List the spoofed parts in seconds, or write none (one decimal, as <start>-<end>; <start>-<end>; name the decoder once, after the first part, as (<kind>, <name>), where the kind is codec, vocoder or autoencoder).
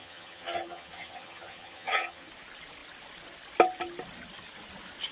0.0-2.3 (vocoder, HiFi-GAN)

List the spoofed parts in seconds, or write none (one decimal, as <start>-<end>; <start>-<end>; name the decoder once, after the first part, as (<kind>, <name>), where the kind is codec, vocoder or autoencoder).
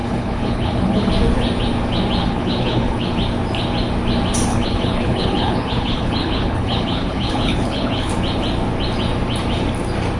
0.0-1.1 (codec, HILCodec); 2.2-3.1; 4.5-8.1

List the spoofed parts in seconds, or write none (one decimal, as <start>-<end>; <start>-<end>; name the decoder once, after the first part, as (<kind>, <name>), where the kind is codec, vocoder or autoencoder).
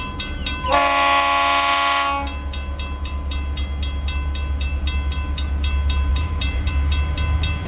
6.1-6.7 (vocoder, BigVGAN v2)